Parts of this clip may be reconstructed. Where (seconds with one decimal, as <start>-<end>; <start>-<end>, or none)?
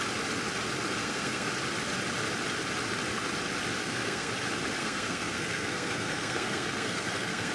1.0-1.5; 3.8-4.3; 4.8-7.5